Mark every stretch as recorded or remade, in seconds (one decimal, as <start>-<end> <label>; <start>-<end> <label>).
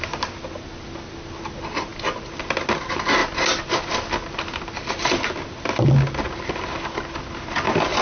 0.0-8.0 recorded